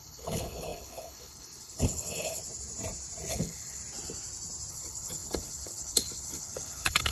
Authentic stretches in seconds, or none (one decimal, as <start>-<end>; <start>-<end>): 2.4-3.3; 3.8-4.7